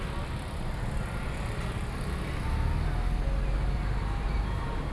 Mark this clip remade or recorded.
recorded